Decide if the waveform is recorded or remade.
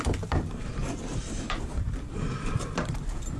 remade